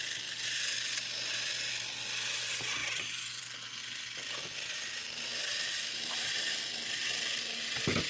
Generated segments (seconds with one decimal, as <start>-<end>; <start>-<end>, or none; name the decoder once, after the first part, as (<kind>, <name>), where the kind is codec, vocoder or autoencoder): none